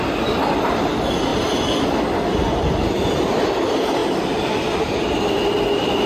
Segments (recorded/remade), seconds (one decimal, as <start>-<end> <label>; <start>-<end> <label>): 0.0-6.1 recorded